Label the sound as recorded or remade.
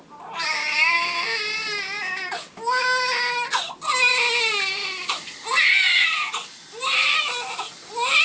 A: recorded